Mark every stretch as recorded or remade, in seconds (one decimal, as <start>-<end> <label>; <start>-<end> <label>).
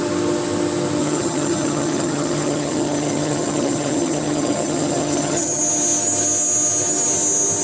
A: 0.0-1.0 recorded; 1.0-5.6 remade; 5.6-7.6 recorded